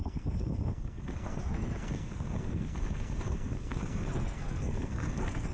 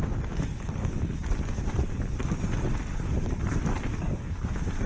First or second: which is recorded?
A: second